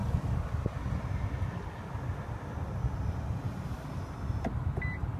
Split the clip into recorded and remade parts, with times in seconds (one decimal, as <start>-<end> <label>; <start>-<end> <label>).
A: 0.0-0.8 remade; 0.8-5.2 recorded